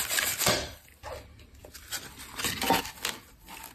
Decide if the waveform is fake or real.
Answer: real